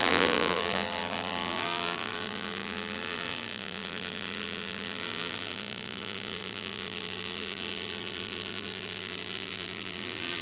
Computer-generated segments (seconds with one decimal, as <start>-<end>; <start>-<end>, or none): 0.0-10.4